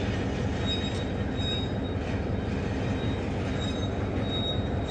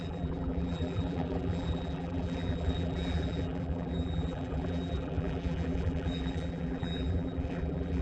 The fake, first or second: second